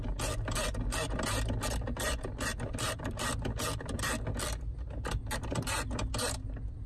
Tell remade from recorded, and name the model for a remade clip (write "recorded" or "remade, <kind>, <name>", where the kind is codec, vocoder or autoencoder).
recorded